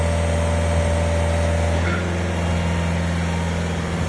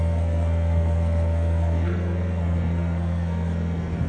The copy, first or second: second